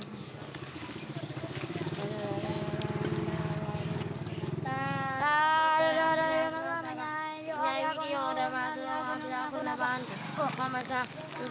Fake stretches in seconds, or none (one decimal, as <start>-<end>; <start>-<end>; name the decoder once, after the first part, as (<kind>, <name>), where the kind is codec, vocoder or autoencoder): 0.0-2.5 (codec, DAC); 3.2-9.6; 10.6-11.5